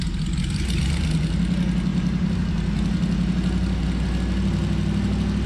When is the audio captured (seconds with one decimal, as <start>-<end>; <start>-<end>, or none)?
0.0-1.9; 2.4-5.5